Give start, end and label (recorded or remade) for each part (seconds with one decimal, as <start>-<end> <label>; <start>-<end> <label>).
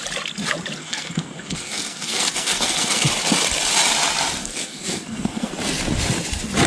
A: 0.0-0.8 recorded; 0.8-3.1 remade; 3.1-4.4 recorded; 4.4-5.5 remade; 5.5-6.7 recorded